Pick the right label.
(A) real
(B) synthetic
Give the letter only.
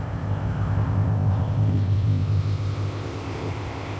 B